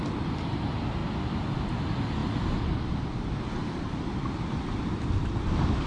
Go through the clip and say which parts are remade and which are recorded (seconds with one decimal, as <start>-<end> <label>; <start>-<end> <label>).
0.0-5.9 recorded